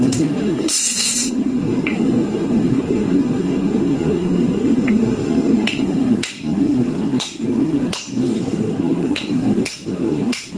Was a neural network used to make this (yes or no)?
yes